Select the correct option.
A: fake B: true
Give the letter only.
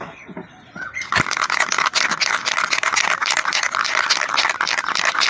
B